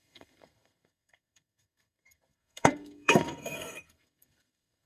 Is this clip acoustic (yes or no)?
no